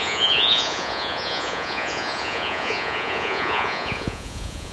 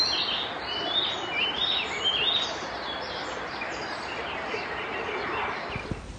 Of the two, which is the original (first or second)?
second